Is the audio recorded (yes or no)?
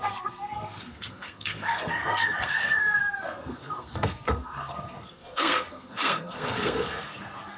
no